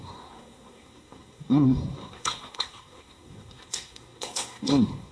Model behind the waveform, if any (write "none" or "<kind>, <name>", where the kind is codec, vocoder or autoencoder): codec, SNAC